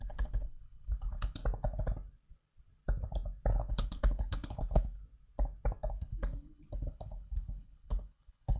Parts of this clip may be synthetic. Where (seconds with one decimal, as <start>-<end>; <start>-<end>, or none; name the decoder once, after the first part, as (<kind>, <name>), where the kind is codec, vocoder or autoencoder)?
0.0-1.4 (codec, HILCodec); 3.7-5.0; 5.9-8.6